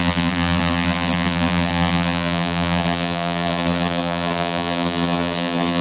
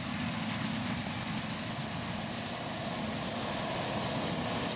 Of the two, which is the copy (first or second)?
first